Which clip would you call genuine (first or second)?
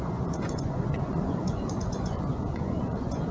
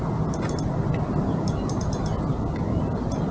second